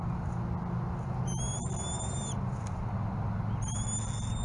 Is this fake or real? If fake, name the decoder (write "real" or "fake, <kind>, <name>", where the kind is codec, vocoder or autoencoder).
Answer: real